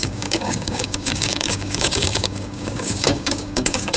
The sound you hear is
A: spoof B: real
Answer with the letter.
A